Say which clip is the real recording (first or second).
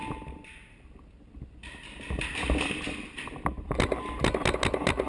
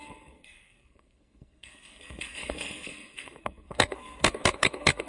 first